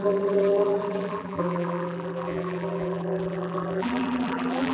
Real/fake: fake